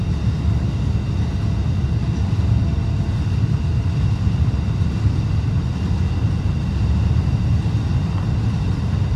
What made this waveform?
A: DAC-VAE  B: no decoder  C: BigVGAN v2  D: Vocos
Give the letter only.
B